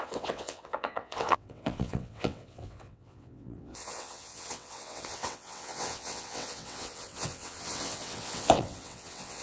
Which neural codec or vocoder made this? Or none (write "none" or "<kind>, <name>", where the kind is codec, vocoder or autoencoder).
vocoder, WaveNeXt